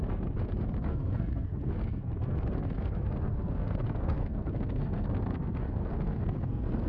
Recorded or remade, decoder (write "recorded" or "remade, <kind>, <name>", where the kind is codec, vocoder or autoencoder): remade, codec, SNAC